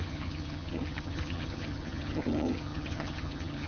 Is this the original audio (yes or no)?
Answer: no